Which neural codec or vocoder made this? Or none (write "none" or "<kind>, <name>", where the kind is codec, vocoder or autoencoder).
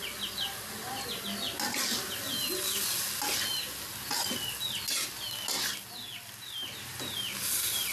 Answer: none